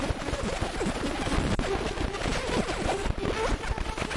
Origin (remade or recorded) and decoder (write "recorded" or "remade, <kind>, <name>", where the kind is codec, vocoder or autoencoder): recorded